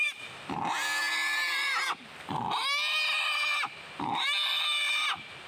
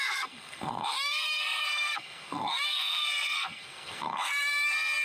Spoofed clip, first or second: second